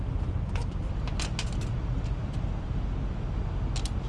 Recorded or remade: recorded